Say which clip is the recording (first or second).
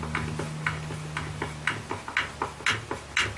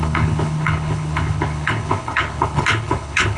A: first